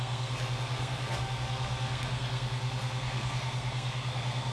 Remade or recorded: remade